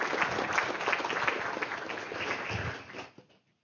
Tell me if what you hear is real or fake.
real